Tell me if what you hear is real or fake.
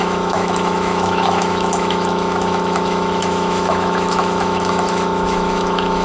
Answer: fake